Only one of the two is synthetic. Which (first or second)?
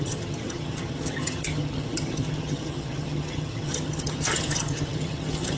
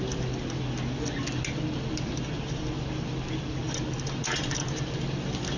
first